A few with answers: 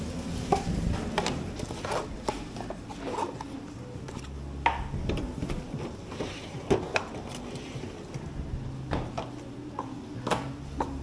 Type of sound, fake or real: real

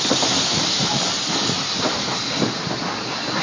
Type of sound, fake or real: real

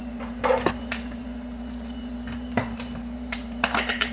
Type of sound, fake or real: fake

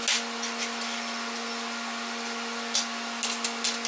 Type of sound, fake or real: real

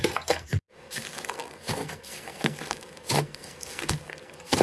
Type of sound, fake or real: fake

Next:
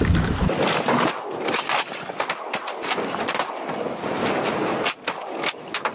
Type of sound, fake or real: real